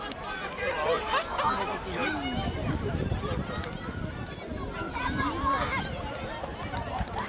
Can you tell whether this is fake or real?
real